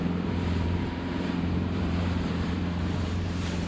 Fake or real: fake